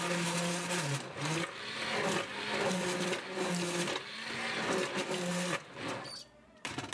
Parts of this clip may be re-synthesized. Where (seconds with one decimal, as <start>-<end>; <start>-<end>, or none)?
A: none